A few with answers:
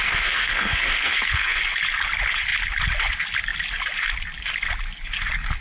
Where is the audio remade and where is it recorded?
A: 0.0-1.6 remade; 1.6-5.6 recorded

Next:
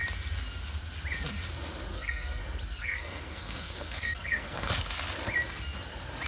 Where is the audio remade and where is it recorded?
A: 0.0-1.9 recorded; 1.9-2.4 remade; 2.4-2.8 recorded; 2.8-4.7 remade; 4.7-6.3 recorded

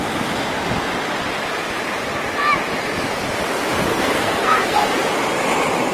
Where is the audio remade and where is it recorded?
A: 0.0-3.9 recorded; 3.9-4.9 remade; 4.9-5.9 recorded

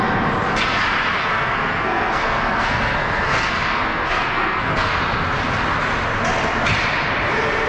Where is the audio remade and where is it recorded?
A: 0.0-1.2 recorded; 1.2-5.0 remade; 5.0-7.7 recorded

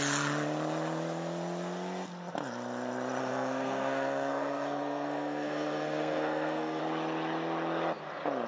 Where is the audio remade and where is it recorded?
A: 0.0-3.2 recorded; 3.2-6.8 remade; 6.8-8.5 recorded

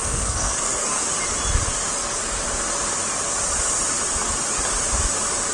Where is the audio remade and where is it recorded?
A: 0.0-1.1 remade; 1.1-5.5 recorded

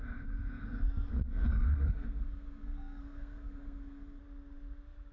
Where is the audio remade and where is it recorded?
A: 0.0-1.1 recorded; 1.1-4.2 remade; 4.2-5.1 recorded